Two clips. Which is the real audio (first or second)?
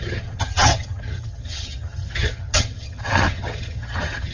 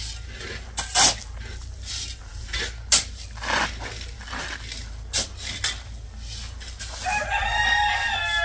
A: second